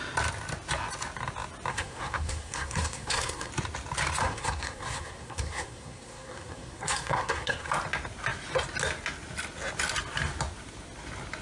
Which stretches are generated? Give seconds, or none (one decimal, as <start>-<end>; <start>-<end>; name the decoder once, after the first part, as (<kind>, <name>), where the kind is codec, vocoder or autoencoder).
1.7-3.5 (codec, SNAC); 4.2-7.7